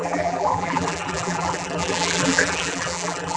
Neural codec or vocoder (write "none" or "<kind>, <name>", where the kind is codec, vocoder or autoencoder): vocoder, BigVGAN v2